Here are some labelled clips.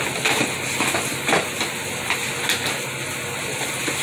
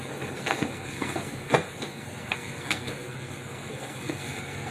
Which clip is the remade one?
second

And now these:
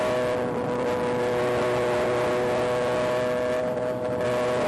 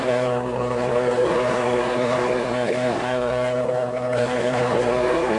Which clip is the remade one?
second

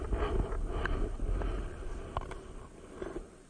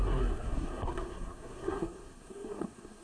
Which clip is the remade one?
second